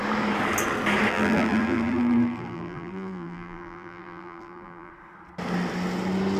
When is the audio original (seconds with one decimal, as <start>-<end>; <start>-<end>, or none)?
0.0-1.1; 4.9-6.4